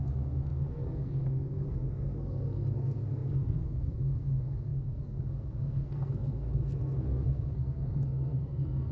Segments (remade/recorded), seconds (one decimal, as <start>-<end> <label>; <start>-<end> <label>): 0.0-8.9 remade